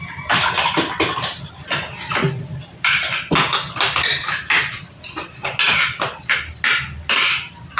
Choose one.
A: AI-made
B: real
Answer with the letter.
B